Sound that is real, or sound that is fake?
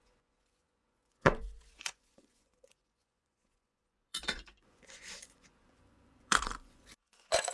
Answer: fake